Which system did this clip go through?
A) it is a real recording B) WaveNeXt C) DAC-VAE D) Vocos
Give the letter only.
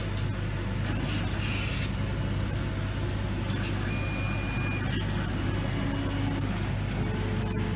A